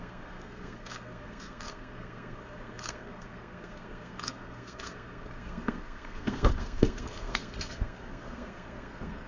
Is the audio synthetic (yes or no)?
yes